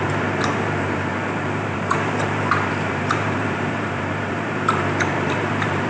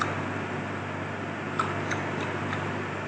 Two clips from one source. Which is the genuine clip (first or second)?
second